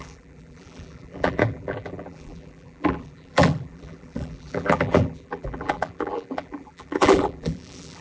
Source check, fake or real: fake